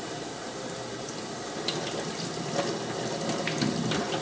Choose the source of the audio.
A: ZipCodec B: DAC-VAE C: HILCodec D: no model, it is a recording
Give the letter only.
D